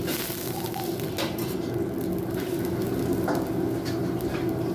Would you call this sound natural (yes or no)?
yes